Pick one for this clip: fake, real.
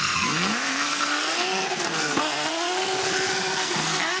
fake